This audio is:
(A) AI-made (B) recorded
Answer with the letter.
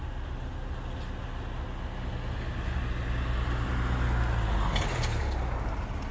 B